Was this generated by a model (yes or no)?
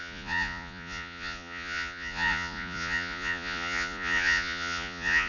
yes